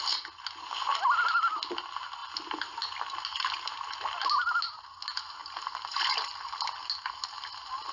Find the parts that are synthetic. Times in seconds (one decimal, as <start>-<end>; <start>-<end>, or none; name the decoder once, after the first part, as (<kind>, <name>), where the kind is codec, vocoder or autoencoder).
none